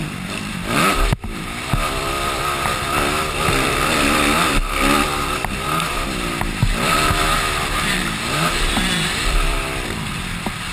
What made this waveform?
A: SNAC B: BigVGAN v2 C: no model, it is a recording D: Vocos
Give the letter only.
B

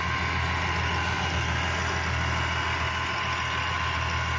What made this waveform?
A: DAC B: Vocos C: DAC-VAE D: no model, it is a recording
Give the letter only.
D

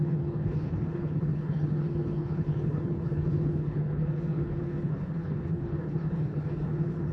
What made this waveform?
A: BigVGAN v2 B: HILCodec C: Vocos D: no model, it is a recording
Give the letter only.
B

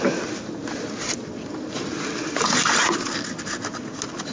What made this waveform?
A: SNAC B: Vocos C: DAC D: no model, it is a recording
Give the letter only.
D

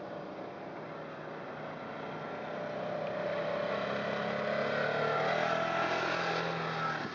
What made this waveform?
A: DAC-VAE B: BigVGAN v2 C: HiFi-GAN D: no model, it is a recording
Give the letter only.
D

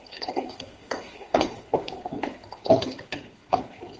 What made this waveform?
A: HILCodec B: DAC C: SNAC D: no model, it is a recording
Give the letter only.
A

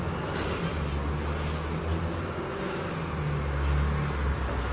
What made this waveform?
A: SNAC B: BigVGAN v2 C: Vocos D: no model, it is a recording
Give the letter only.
D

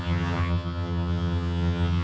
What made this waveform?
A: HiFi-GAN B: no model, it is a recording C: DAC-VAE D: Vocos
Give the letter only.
A